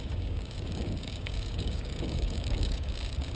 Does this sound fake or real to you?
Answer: fake